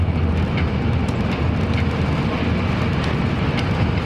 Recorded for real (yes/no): yes